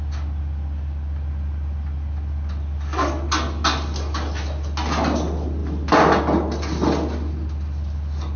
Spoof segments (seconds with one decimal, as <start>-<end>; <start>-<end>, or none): none